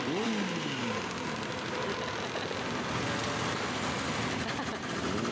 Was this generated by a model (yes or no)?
no